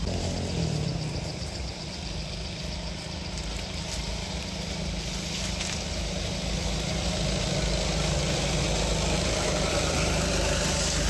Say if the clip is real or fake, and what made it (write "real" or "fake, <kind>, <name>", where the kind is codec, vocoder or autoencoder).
real